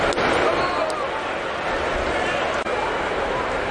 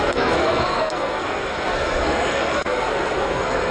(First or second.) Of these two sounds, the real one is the first